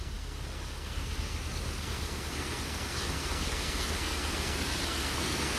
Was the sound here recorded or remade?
remade